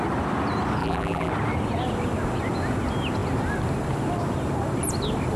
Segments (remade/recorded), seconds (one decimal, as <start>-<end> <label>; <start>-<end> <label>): 0.0-0.8 recorded; 0.8-1.3 remade; 1.3-5.4 recorded